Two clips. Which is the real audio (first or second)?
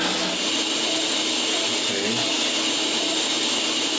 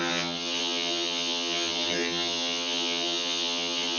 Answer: first